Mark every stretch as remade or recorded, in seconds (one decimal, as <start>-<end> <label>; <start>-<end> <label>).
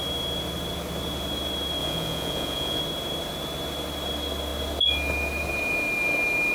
0.0-1.8 recorded; 1.8-2.8 remade; 2.8-6.5 recorded